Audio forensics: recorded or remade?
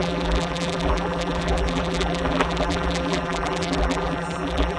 remade